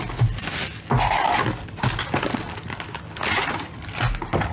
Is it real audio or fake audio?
real